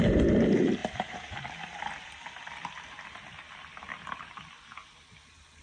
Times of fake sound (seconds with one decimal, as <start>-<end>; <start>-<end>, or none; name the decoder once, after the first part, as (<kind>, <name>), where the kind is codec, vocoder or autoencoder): 0.8-1.5 (vocoder, BigVGAN v2)